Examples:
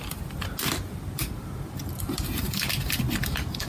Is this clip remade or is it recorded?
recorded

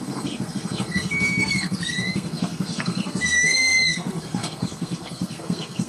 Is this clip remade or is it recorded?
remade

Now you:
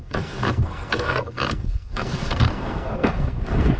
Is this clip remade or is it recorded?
remade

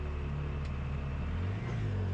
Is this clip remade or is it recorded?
recorded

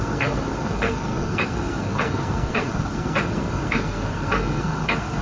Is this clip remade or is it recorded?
remade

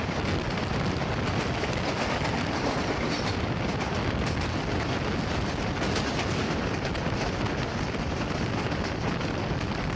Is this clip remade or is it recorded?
recorded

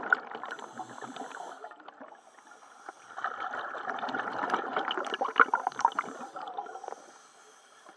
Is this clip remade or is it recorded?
recorded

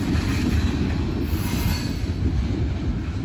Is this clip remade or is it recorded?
recorded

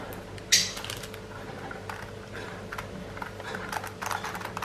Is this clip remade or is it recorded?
recorded